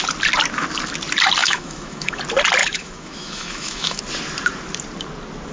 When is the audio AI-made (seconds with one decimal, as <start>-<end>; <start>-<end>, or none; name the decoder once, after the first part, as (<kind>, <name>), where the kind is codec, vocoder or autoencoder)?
1.4-2.2 (autoencoder, DAC-VAE); 2.6-4.0